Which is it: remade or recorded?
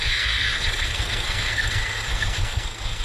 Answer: remade